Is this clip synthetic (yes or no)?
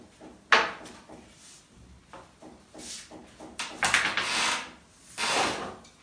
no